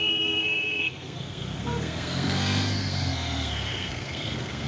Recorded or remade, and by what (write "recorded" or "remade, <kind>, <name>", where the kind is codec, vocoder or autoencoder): remade, codec, SNAC